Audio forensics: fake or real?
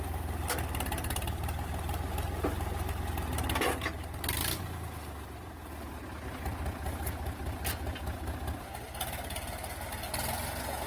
real